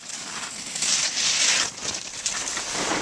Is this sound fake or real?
real